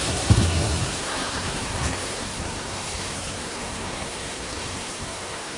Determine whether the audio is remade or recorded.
remade